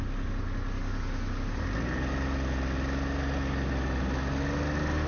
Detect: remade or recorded recorded